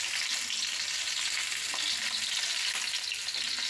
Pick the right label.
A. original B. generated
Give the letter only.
A